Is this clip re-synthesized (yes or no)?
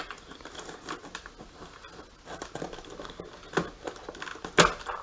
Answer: no